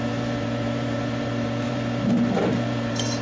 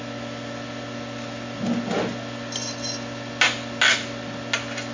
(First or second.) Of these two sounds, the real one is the second